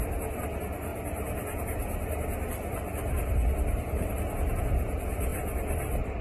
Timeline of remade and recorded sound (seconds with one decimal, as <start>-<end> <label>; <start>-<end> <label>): 0.0-5.3 recorded; 5.3-6.2 remade